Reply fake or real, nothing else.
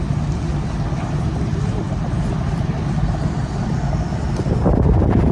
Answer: real